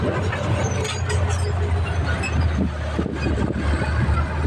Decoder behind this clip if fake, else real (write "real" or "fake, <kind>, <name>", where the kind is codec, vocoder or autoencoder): real